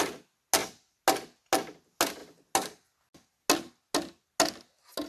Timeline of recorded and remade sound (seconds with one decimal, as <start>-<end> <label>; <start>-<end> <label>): 0.0-5.1 recorded